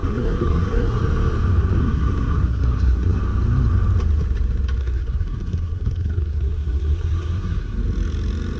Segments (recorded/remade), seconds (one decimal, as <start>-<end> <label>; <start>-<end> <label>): 0.0-1.0 remade; 1.0-1.8 recorded; 1.8-3.2 remade; 3.2-4.8 recorded; 4.8-7.8 remade; 7.8-8.6 recorded